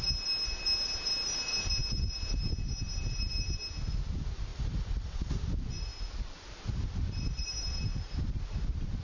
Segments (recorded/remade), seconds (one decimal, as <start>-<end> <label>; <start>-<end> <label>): 0.0-4.5 recorded; 4.5-5.3 remade; 5.3-7.9 recorded; 7.9-8.4 remade; 8.4-9.0 recorded